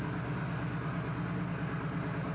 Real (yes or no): no